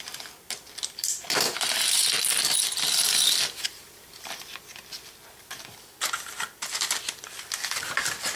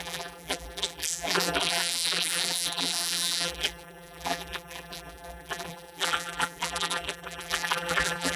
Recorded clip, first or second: first